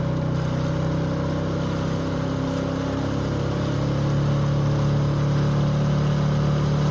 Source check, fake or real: real